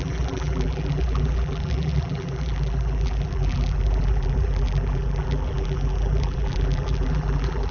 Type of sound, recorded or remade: remade